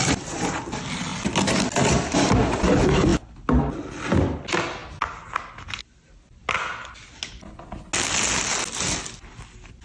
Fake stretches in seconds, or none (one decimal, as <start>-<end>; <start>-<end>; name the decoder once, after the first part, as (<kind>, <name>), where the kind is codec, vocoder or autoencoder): none